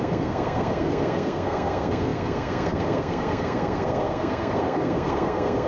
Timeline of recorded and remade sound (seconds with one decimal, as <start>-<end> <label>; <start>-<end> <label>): 0.0-5.7 remade